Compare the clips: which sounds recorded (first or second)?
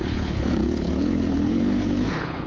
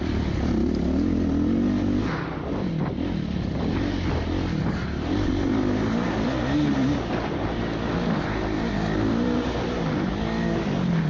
second